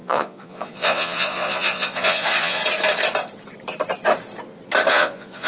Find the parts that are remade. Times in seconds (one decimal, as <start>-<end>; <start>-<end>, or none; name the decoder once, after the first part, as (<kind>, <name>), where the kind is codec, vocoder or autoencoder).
0.0-2.6 (vocoder, Vocos); 4.9-5.5